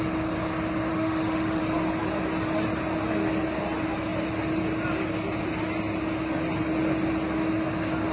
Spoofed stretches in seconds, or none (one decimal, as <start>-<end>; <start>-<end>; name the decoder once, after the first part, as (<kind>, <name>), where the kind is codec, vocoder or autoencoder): 0.9-1.6 (autoencoder, DAC-VAE)